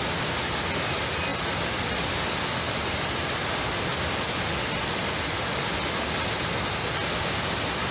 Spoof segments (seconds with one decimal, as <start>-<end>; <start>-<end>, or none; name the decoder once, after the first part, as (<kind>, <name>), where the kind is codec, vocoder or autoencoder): none